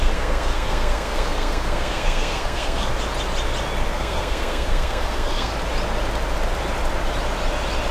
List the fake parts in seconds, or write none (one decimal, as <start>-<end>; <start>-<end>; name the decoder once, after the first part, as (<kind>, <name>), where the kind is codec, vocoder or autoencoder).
0.0-2.9 (codec, SNAC); 3.9-5.5